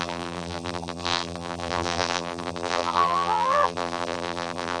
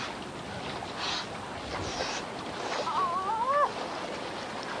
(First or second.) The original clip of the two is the second